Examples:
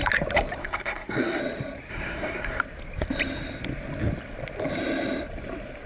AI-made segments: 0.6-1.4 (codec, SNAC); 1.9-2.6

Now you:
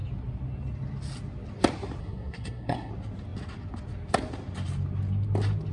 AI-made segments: 2.0-2.9 (codec, SNAC)